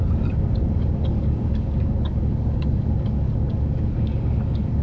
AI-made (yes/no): yes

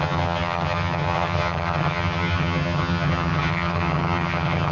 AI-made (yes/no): yes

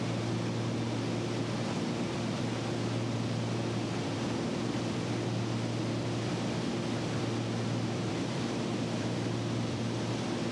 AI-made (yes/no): yes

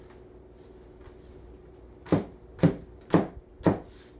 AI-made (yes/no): no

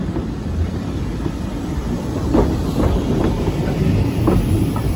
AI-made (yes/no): yes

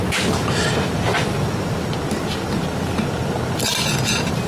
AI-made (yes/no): no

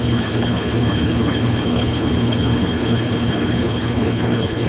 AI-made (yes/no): yes